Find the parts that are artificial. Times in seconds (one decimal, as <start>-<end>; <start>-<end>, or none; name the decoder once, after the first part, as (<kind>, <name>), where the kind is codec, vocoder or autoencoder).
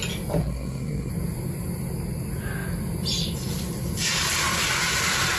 0.4-1.1 (codec, SNAC)